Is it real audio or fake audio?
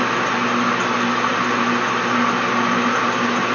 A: real